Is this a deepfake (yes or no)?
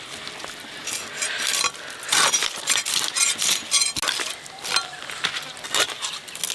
no